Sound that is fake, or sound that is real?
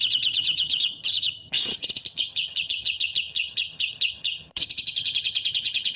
fake